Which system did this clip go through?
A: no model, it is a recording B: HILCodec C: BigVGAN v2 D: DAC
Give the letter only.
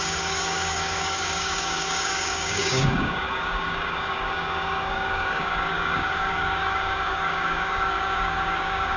D